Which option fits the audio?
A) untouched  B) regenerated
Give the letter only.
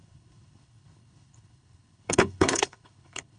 B